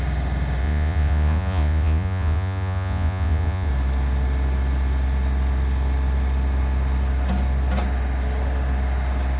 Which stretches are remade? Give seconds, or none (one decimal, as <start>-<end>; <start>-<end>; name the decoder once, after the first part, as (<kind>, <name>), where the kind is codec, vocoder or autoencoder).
0.6-3.7 (vocoder, Vocos)